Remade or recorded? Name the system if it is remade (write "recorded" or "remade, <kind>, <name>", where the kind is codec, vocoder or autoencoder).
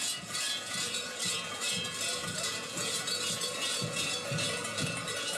remade, vocoder, Vocos